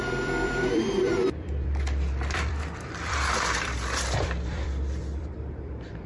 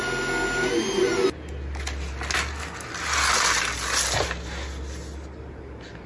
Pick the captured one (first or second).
second